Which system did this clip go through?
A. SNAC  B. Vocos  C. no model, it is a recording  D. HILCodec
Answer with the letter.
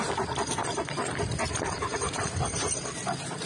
C